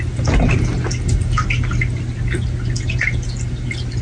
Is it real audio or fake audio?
real